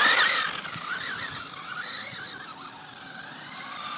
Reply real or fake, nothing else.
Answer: real